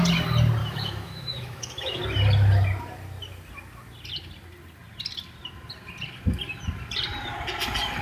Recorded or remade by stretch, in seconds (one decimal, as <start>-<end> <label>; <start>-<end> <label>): 0.0-0.6 recorded; 0.6-2.0 remade; 2.0-8.0 recorded